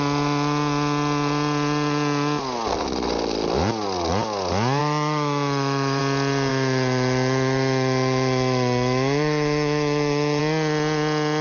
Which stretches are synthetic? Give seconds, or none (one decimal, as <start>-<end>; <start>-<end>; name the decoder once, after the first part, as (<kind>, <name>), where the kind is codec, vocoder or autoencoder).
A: 4.8-6.0 (autoencoder, DAC-VAE); 6.5-10.4